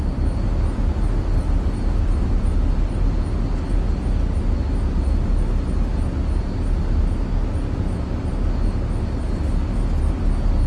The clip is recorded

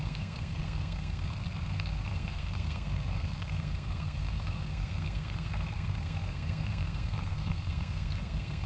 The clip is remade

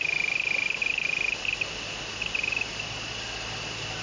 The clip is recorded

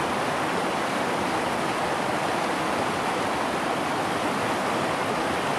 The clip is recorded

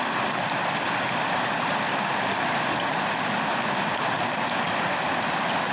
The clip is recorded